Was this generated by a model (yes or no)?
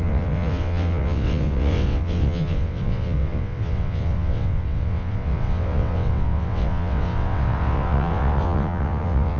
yes